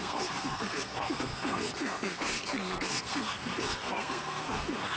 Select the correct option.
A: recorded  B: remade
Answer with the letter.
B